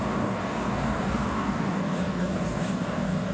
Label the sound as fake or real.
fake